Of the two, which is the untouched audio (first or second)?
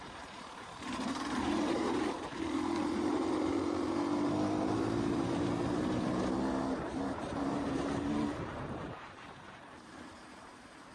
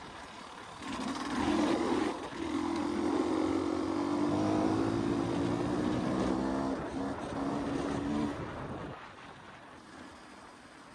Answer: second